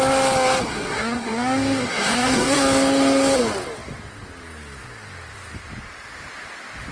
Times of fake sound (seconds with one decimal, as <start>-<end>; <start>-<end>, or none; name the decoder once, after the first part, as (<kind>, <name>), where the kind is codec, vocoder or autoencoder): 0.7-2.6 (codec, SNAC)